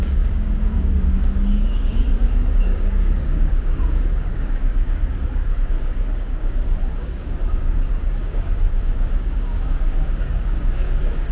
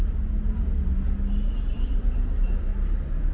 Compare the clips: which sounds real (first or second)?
second